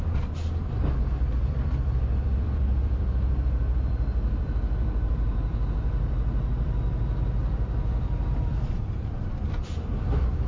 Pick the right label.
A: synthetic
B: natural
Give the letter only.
A